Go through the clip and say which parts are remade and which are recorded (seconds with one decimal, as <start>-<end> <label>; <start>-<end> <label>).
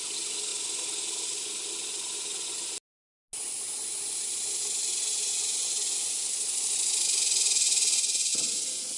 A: 0.0-9.0 recorded